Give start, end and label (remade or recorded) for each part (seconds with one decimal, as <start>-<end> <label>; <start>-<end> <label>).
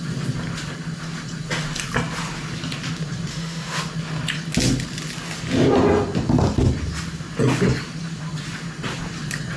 0.0-3.3 recorded; 3.3-3.8 remade; 3.8-9.6 recorded